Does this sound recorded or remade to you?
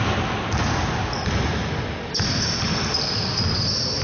recorded